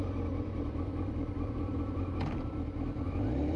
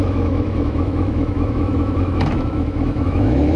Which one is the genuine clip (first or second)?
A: first